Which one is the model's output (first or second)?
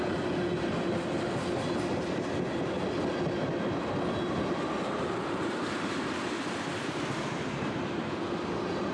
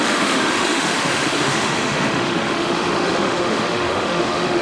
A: second